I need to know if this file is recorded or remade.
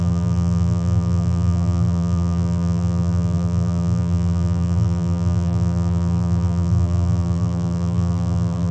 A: remade